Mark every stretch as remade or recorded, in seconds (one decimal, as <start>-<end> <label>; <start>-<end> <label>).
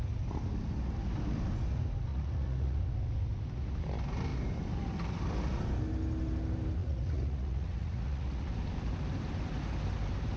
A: 0.0-2.1 recorded; 2.1-2.8 remade; 2.8-6.8 recorded; 6.8-8.5 remade; 8.5-10.4 recorded